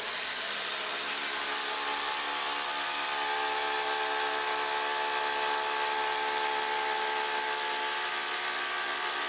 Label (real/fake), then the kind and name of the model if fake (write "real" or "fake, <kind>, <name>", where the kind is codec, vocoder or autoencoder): real